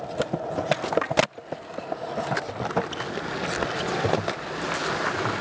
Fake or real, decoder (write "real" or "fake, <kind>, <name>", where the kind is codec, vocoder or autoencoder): real